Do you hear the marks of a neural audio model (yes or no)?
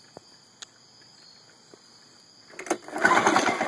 no